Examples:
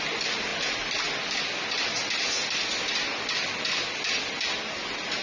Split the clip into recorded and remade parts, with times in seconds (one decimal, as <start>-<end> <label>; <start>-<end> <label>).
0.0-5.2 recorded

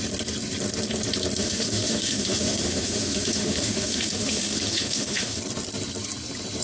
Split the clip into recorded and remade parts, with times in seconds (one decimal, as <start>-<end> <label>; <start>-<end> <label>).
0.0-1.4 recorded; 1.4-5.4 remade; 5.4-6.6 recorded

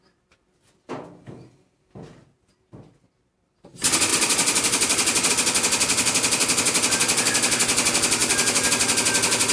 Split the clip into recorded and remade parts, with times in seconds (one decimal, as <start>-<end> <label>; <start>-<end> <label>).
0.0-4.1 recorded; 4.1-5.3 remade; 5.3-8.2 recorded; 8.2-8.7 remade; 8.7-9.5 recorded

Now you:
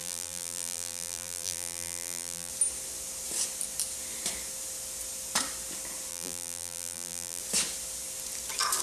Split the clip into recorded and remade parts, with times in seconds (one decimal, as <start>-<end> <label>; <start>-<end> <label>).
0.0-2.5 remade; 2.5-6.1 recorded; 6.1-7.4 remade; 7.4-8.8 recorded

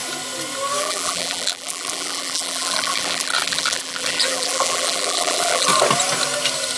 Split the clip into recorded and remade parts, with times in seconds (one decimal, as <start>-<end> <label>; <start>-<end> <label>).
0.0-0.8 recorded; 0.8-5.7 remade; 5.7-6.8 recorded

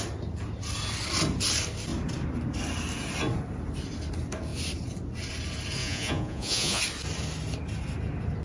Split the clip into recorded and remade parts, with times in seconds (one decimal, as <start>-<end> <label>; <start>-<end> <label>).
0.0-5.8 recorded; 5.8-6.8 remade; 6.8-8.4 recorded

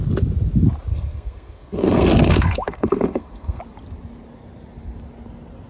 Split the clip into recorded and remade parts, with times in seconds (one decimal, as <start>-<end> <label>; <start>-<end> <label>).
0.0-0.9 recorded; 0.9-3.6 remade; 3.6-5.7 recorded

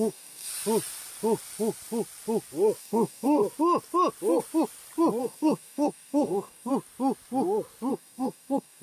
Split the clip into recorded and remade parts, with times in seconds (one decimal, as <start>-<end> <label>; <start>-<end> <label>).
0.0-0.5 remade; 0.5-2.8 recorded; 2.8-3.4 remade; 3.4-5.2 recorded; 5.2-6.7 remade; 6.7-7.9 recorded; 7.9-8.8 remade